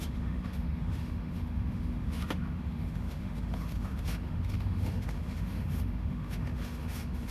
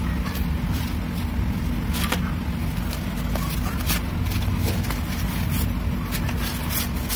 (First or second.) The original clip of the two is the second